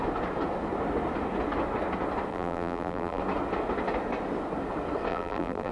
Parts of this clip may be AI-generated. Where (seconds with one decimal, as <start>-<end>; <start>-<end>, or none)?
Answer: 2.3-3.2; 5.1-5.7